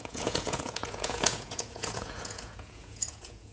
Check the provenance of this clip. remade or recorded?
remade